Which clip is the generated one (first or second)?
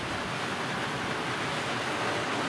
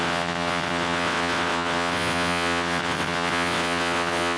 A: second